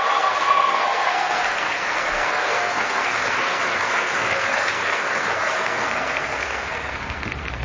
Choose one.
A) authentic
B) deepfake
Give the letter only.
B